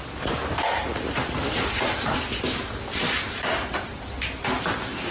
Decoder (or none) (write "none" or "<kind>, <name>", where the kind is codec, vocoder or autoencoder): none